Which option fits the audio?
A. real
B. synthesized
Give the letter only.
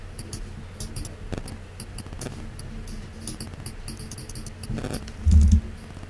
A